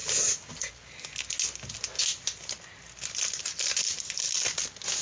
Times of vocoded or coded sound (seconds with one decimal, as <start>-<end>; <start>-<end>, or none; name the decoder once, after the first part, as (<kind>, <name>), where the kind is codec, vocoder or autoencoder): none